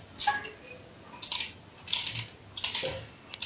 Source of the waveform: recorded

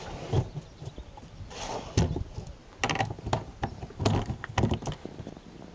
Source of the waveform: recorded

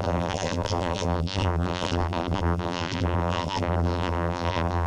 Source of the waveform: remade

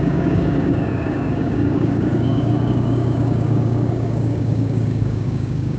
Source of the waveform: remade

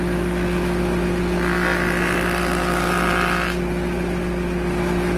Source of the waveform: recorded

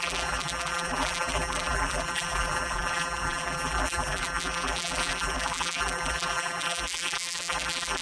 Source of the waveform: remade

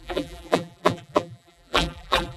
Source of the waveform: remade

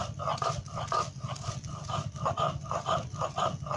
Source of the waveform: recorded